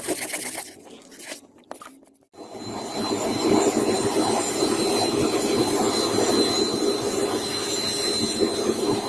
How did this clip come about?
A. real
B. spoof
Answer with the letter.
A